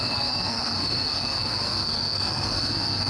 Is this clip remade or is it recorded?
remade